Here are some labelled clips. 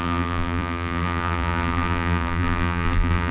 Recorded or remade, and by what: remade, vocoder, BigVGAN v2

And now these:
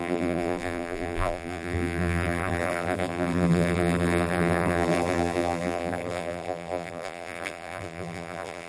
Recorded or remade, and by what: remade, vocoder, BigVGAN v2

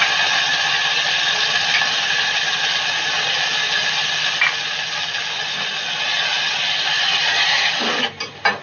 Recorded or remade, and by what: recorded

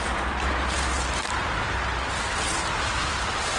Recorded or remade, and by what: recorded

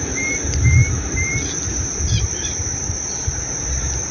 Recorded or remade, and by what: remade, vocoder, BigVGAN v2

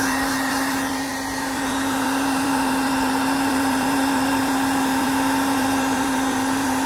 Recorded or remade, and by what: remade, vocoder, BigVGAN v2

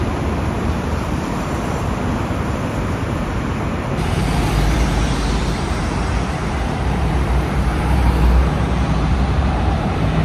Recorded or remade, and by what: remade, vocoder, BigVGAN v2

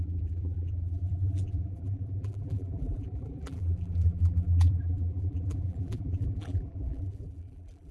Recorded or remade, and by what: remade, vocoder, BigVGAN v2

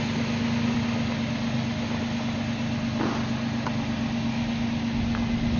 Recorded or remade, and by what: recorded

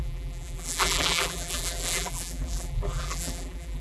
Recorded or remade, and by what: remade, vocoder, BigVGAN v2